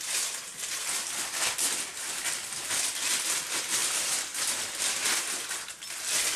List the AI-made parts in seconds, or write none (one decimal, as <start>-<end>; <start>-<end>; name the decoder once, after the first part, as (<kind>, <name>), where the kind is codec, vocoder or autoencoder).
none